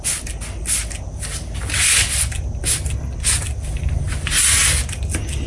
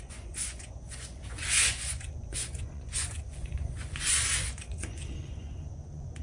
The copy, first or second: second